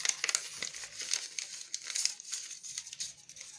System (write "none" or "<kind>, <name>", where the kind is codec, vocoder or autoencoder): none